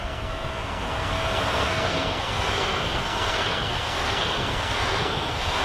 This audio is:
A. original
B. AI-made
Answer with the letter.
B